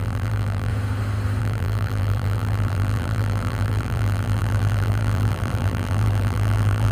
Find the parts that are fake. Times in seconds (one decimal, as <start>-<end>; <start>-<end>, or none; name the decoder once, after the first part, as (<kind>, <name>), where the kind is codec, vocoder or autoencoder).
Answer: 0.0-0.7 (vocoder, BigVGAN v2); 1.4-6.9